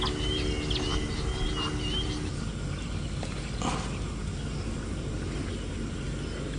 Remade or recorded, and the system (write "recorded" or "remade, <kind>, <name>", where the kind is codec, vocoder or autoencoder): recorded